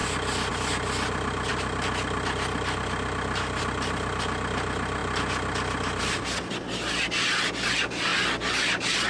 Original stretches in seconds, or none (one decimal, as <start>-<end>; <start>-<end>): 0.0-9.1